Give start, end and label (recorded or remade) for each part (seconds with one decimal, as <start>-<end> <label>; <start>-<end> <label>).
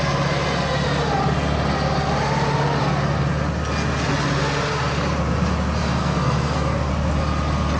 0.0-6.0 recorded; 6.0-6.9 remade; 6.9-7.8 recorded